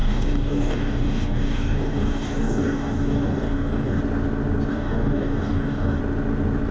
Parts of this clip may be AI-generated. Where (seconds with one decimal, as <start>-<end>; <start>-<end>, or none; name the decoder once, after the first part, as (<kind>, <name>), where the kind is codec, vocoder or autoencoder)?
0.0-4.0 (codec, DAC); 4.7-6.0